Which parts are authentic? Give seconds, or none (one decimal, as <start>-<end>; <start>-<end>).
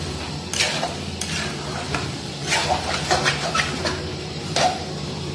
0.0-1.7; 3.3-4.1